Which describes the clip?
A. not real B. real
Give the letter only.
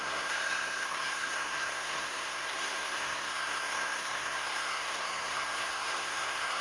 A